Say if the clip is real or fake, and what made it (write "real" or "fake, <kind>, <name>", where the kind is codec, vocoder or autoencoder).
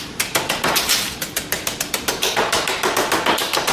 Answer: fake, vocoder, BigVGAN v2